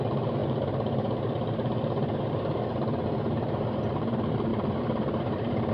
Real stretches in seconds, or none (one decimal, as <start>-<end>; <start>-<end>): none